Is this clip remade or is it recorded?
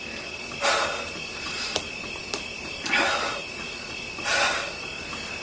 recorded